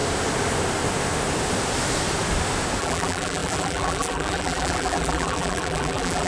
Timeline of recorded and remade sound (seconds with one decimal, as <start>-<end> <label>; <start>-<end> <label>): 0.0-2.8 recorded; 2.8-6.3 remade